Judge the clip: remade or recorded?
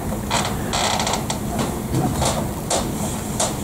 recorded